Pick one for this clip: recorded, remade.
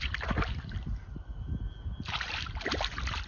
recorded